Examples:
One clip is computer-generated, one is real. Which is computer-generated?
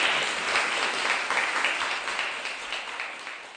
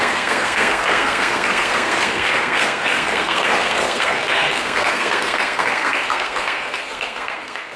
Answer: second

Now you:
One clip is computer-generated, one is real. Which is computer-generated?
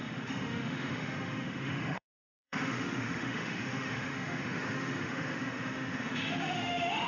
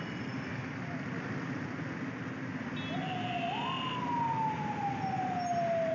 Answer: first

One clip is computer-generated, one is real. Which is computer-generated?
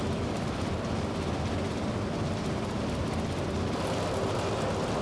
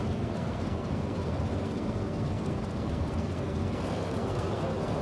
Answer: second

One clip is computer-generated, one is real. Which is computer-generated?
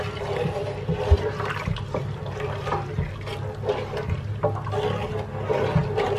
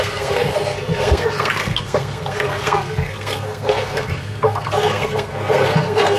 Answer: second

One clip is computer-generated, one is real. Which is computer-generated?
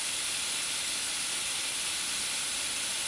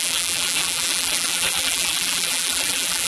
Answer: second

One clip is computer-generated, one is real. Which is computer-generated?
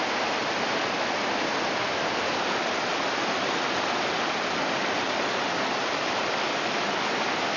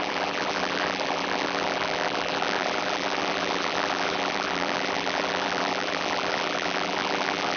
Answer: second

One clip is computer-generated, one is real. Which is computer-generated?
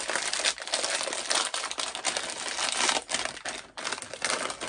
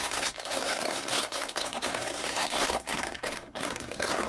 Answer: second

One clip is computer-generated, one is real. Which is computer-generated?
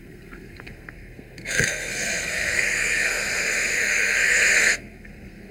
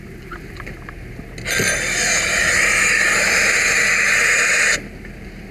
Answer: first